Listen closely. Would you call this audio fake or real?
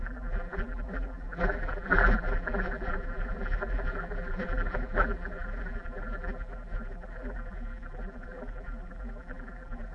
fake